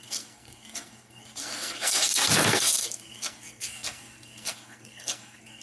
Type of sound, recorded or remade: remade